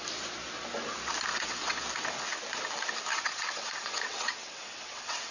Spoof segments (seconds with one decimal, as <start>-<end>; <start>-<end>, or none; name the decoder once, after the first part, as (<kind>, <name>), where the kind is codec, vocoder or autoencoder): 1.3-1.8 (vocoder, WaveNeXt); 3.1-5.3